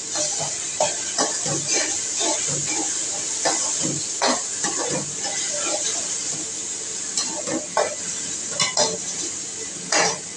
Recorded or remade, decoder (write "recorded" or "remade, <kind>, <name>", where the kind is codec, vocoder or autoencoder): recorded